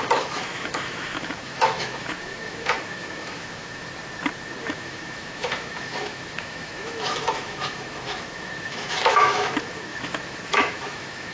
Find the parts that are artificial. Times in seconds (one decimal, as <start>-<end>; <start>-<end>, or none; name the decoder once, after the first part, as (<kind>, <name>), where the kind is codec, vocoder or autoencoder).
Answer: 0.0-3.8 (autoencoder, DAC-VAE); 4.6-11.3